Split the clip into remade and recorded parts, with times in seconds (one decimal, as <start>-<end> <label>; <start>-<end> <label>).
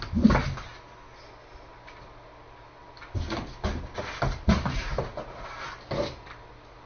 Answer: 0.0-6.9 recorded